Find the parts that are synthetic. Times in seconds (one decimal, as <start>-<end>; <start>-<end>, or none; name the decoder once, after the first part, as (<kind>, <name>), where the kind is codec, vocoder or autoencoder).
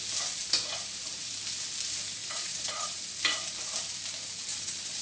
2.2-3.0 (vocoder, Vocos); 4.5-5.0